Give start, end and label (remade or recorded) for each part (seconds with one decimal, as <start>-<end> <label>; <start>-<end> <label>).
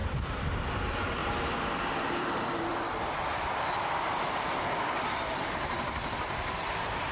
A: 0.0-0.5 remade; 0.5-1.2 recorded; 1.2-5.5 remade; 5.5-7.1 recorded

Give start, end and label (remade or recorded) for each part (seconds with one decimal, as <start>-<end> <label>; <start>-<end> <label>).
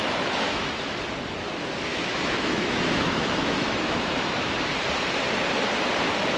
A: 0.0-1.0 remade; 1.0-1.9 recorded; 1.9-4.5 remade; 4.5-6.4 recorded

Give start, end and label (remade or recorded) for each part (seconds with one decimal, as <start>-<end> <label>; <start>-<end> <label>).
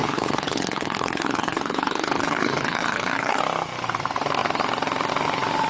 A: 0.0-3.4 remade; 3.4-5.7 recorded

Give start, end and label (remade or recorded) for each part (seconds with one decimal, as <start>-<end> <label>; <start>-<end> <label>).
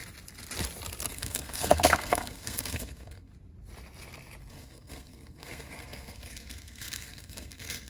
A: 0.0-1.1 recorded; 1.1-3.3 remade; 3.3-4.5 recorded; 4.5-7.9 remade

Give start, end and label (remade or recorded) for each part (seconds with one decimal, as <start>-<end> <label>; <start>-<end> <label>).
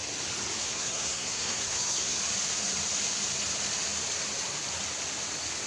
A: 0.0-0.6 recorded; 0.6-2.2 remade; 2.2-5.7 recorded